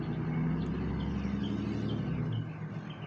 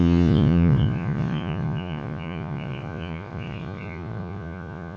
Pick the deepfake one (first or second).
second